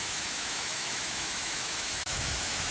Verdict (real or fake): fake